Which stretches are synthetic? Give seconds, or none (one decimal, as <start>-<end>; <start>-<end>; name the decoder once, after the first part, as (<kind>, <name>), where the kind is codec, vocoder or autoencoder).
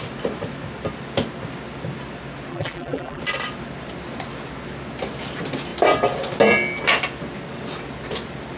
2.5-3.2 (vocoder, BigVGAN v2)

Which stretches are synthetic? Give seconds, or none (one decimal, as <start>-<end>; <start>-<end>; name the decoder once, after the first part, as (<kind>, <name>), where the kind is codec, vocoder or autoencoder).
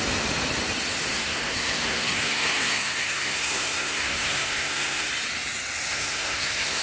1.1-5.1 (codec, SNAC); 5.9-6.8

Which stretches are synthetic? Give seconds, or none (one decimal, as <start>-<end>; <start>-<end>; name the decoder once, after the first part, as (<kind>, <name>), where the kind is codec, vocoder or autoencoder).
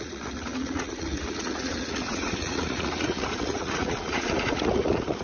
0.0-5.2 (vocoder, Vocos)